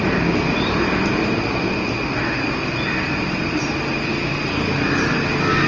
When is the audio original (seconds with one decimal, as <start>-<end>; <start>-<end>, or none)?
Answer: 0.0-5.7